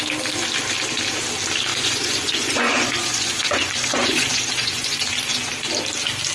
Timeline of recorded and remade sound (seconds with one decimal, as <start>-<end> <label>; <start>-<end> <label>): 0.0-1.7 recorded; 1.7-5.5 remade; 5.5-6.3 recorded